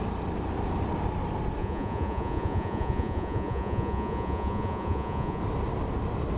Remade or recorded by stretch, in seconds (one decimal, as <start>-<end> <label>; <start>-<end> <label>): 0.0-1.6 recorded; 1.6-5.4 remade; 5.4-6.4 recorded